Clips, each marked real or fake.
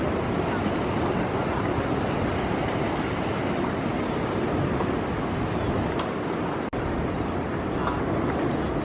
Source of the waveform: real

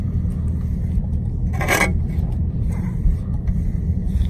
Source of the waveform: fake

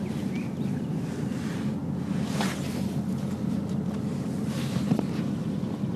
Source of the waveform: real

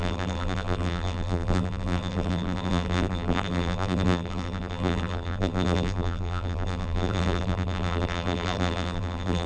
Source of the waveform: fake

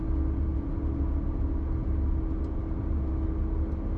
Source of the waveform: real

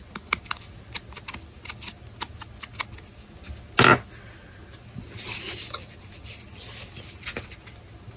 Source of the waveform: real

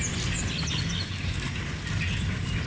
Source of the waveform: real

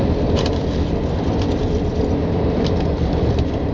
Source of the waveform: real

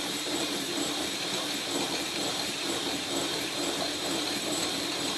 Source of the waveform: fake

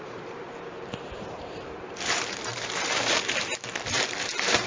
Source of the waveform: fake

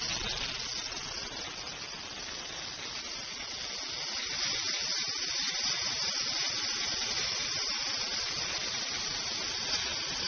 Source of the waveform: real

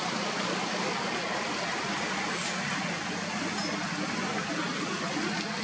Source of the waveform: real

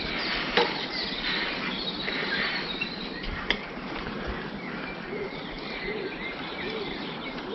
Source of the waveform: fake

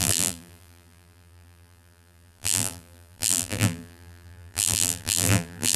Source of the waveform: fake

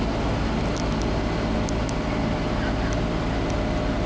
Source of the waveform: real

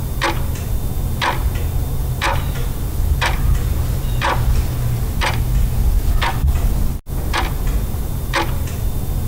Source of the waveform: real